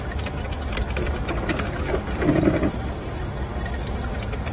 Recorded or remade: recorded